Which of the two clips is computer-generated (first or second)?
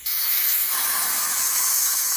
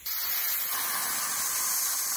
first